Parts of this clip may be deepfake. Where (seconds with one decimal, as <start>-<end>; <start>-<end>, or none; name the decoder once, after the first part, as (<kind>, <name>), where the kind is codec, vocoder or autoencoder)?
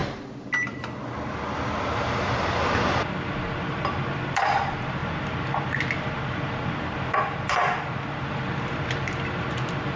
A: none